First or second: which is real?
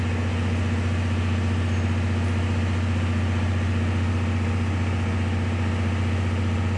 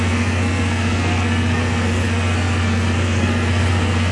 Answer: first